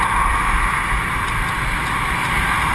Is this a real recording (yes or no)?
yes